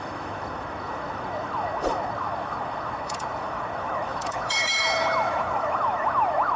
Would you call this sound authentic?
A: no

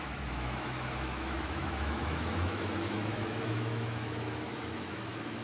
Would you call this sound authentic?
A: no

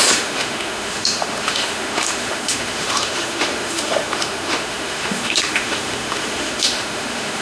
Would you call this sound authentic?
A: no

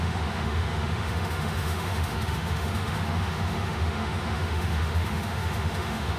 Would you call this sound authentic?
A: no